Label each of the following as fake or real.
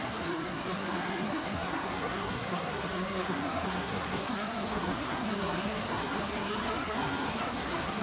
fake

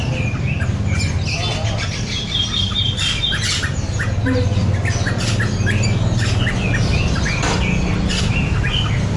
real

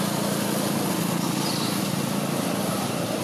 real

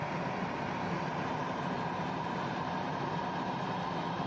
fake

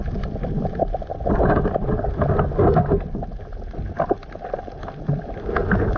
real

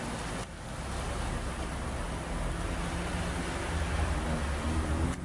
real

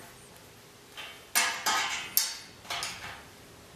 real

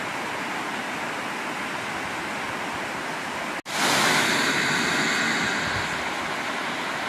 real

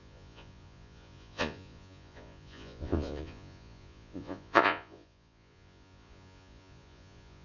fake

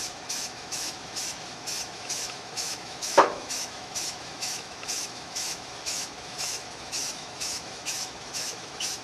fake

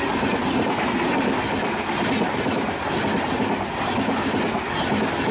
real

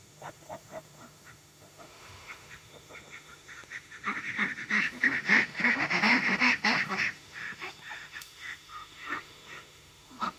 fake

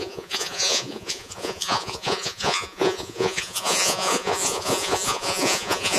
fake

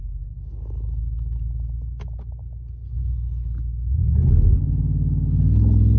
real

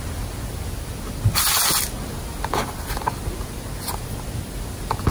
real